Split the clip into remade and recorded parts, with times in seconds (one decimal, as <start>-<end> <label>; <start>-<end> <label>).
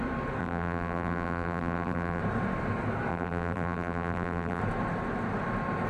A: 0.0-0.4 recorded; 0.4-2.2 remade; 2.2-3.1 recorded; 3.1-4.6 remade; 4.6-5.9 recorded